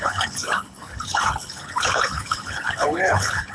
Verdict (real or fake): fake